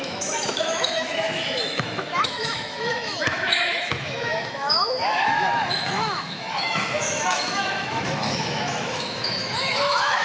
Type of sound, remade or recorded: remade